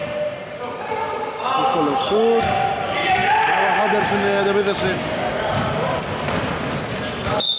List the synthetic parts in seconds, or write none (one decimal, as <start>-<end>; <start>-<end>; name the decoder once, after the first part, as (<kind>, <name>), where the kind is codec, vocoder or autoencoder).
none